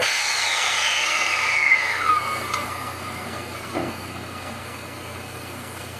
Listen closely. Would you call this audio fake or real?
fake